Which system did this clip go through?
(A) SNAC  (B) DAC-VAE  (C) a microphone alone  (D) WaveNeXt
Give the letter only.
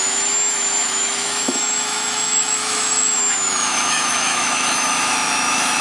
B